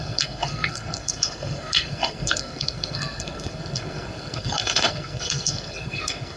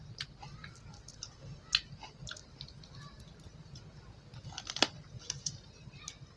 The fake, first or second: first